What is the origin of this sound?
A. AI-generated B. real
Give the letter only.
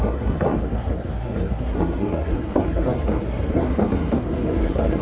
A